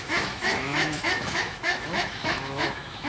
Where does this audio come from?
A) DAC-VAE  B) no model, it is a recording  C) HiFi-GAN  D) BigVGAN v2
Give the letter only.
A